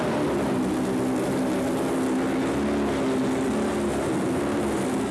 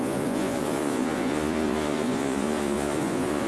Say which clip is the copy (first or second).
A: second